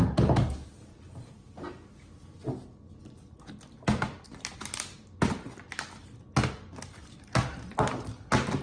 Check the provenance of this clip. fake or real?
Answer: real